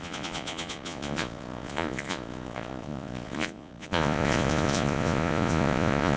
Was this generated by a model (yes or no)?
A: yes